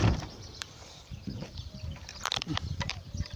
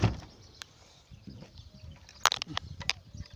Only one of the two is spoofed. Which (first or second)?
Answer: first